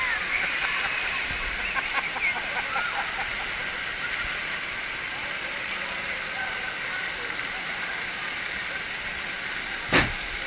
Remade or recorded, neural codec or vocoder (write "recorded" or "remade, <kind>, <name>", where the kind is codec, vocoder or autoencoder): recorded